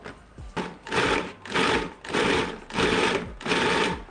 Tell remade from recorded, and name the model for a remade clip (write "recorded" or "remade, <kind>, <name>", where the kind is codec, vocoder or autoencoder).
recorded